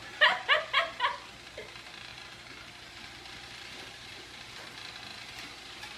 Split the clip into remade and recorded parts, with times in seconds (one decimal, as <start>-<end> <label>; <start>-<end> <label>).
0.0-2.1 recorded; 2.1-4.5 remade; 4.5-6.0 recorded